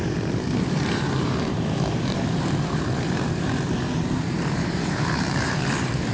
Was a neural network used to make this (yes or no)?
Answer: yes